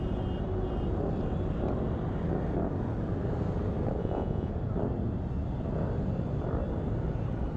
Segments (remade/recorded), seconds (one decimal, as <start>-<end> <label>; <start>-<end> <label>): 0.0-4.0 recorded; 4.0-4.5 remade; 4.5-7.6 recorded

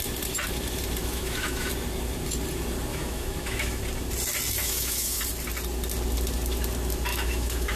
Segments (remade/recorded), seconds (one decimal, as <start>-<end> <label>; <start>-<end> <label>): 0.0-1.0 recorded; 1.0-1.7 remade; 1.7-2.9 recorded; 2.9-3.8 remade; 3.8-4.6 recorded; 4.6-5.2 remade; 5.2-7.1 recorded; 7.1-7.8 remade

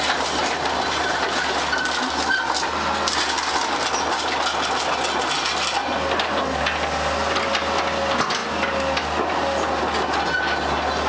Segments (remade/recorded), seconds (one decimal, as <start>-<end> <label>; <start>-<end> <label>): 0.0-11.1 recorded

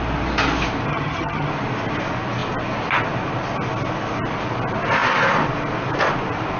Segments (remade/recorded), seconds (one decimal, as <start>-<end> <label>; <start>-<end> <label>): 0.0-0.9 recorded; 0.9-1.5 remade; 1.5-6.6 recorded

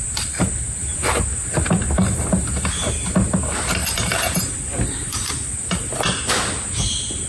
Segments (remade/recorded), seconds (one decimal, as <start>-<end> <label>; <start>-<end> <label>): 0.0-3.8 recorded; 3.8-5.3 remade; 5.3-7.3 recorded

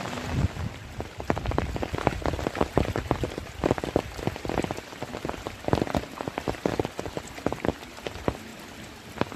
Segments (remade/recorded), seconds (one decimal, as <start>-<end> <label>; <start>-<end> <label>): 0.0-9.4 recorded